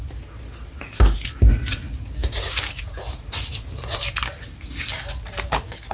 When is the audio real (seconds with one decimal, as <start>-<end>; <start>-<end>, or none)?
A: 0.0-2.2; 2.8-5.9